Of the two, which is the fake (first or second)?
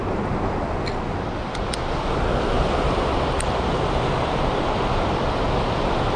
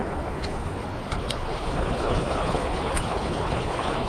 second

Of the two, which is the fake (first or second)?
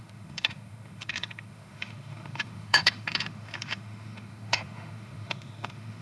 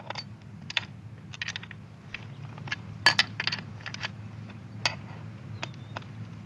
first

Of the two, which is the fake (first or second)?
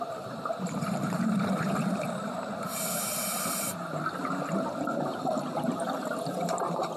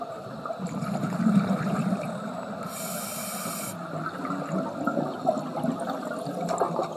first